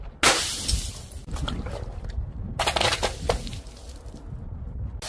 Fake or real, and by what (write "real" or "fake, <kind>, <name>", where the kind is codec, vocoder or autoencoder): real